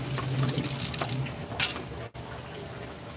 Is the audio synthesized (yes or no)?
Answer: no